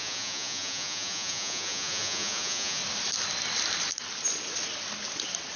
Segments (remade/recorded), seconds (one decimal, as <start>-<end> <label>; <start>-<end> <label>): 0.0-2.8 remade; 2.8-5.6 recorded